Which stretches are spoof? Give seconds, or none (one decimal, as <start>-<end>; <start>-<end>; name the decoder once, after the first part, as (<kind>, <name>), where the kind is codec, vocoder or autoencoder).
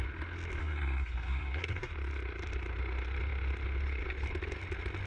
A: 0.6-1.9 (codec, SNAC)